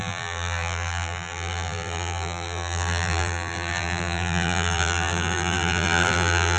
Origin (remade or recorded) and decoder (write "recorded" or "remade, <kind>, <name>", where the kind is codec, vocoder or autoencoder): remade, vocoder, BigVGAN v2